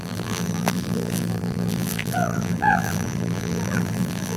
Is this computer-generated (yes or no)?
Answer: yes